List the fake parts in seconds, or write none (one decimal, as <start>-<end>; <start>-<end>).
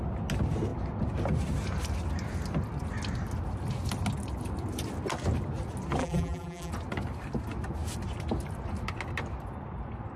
6.0-6.7